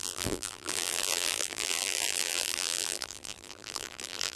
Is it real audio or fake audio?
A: fake